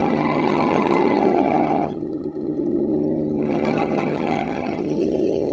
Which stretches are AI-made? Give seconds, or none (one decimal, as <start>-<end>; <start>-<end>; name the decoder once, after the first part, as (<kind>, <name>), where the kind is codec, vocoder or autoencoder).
0.0-5.5 (vocoder, HiFi-GAN)